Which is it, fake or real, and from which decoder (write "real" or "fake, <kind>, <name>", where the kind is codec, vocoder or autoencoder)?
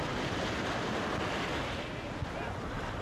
real